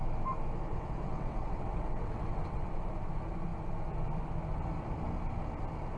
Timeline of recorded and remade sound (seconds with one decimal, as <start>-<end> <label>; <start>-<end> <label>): 0.0-0.7 recorded; 0.7-2.7 remade; 2.7-6.0 recorded

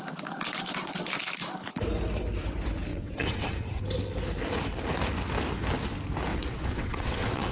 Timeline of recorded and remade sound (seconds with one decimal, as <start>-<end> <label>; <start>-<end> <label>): 0.0-2.9 recorded; 2.9-3.8 remade; 3.8-6.3 recorded; 6.3-7.5 remade

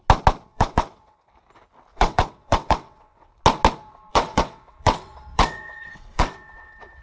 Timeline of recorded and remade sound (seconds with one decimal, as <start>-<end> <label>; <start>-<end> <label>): 0.0-0.5 recorded; 0.5-1.3 remade; 1.3-1.9 recorded; 1.9-3.3 remade; 3.3-4.1 recorded; 4.1-7.0 remade

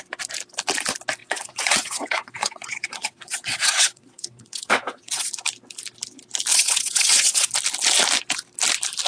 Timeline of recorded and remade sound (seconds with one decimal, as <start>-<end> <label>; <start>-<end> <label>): 0.0-1.2 recorded; 1.2-5.3 remade; 5.3-6.5 recorded; 6.5-7.5 remade; 7.5-9.1 recorded

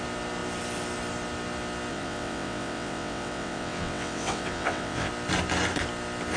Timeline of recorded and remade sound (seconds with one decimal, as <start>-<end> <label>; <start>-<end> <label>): 0.0-1.9 recorded; 1.9-5.1 remade; 5.1-6.4 recorded

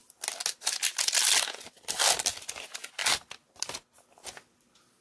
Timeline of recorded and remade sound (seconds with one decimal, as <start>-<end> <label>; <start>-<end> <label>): 0.0-5.0 recorded

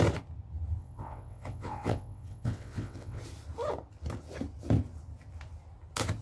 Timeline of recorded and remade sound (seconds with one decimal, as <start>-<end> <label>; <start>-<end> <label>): 0.0-0.8 recorded; 0.8-3.2 remade; 3.2-6.2 recorded